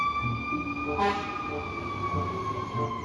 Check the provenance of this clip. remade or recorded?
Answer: recorded